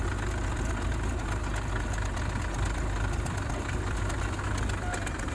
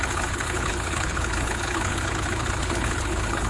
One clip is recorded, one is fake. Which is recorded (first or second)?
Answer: first